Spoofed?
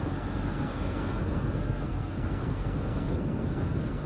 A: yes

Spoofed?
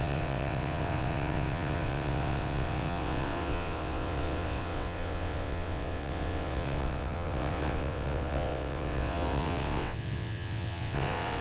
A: yes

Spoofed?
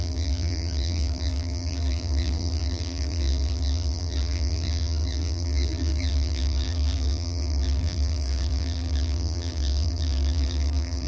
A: yes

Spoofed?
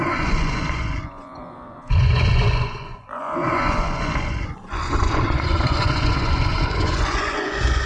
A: yes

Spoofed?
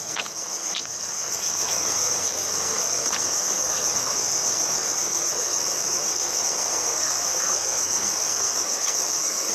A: yes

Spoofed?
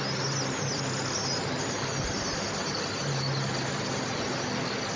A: no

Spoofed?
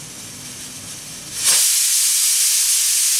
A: no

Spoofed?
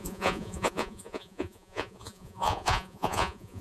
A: yes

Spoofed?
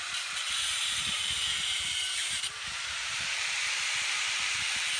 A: yes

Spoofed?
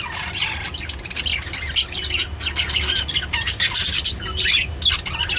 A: no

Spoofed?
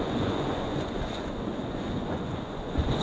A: yes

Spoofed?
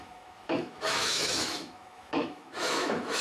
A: yes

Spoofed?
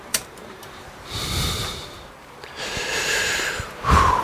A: yes